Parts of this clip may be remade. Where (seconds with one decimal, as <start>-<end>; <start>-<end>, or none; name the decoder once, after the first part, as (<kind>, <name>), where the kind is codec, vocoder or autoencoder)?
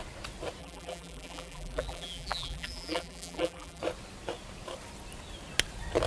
0.6-3.8 (vocoder, BigVGAN v2)